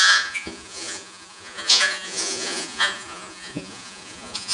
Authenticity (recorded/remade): remade